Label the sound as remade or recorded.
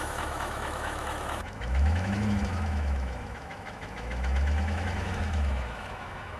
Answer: remade